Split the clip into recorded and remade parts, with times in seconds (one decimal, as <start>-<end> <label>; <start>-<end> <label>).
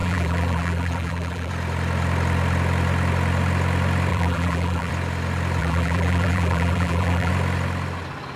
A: 0.0-1.5 remade; 1.5-4.1 recorded; 4.1-4.9 remade; 4.9-5.6 recorded; 5.6-7.3 remade; 7.3-8.4 recorded